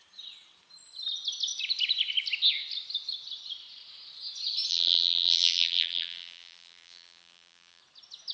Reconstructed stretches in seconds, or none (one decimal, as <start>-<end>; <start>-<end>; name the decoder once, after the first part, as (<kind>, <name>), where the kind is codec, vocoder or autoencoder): 4.7-7.8 (vocoder, BigVGAN v2)